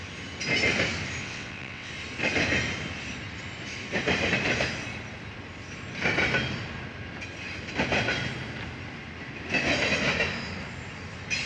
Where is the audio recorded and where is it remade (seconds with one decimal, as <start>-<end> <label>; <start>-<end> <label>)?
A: 0.0-1.2 recorded; 1.2-1.9 remade; 1.9-11.5 recorded